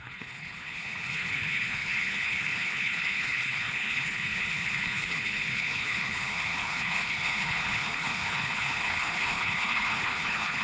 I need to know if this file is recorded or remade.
remade